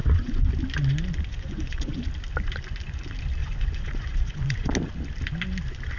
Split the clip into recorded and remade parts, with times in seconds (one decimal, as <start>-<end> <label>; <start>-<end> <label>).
0.0-0.5 remade; 0.5-1.3 recorded; 1.3-2.0 remade; 2.0-3.4 recorded; 3.4-4.7 remade; 4.7-6.0 recorded